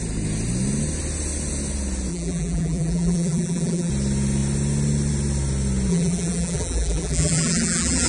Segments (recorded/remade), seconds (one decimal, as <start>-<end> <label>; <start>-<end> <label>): 0.0-2.1 recorded; 2.1-3.9 remade; 3.9-5.9 recorded; 5.9-8.1 remade